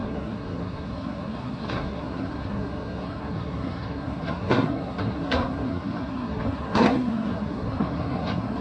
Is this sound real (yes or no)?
no